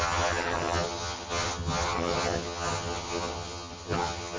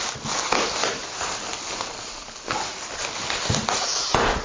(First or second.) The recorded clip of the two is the second